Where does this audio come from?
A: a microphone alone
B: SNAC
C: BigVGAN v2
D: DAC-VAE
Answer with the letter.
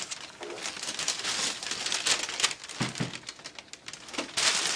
A